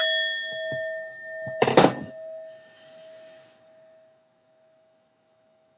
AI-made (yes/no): yes